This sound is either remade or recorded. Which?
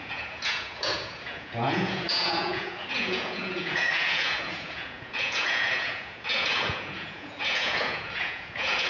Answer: remade